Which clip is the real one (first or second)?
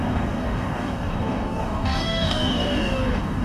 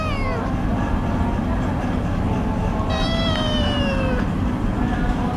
second